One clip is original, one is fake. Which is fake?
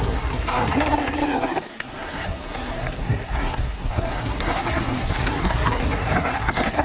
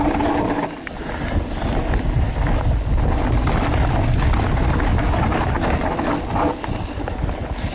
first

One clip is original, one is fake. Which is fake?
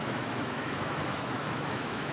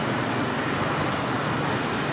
first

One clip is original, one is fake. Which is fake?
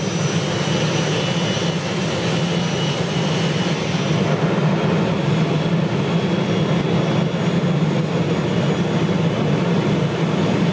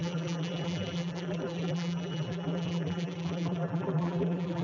second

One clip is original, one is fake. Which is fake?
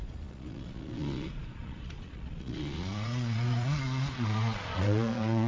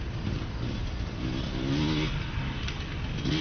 first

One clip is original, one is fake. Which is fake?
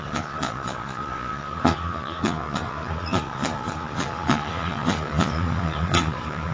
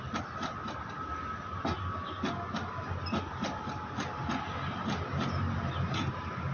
first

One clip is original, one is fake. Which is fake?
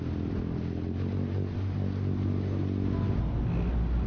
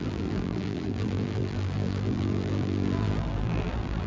second